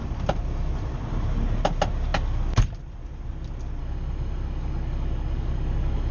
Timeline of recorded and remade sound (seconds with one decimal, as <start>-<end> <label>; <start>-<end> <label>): 0.0-3.8 recorded; 3.8-6.1 remade